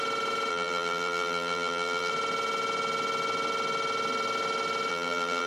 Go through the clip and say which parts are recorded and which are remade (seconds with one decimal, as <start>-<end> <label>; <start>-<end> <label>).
0.0-0.5 recorded; 0.5-2.1 remade; 2.1-4.9 recorded; 4.9-5.5 remade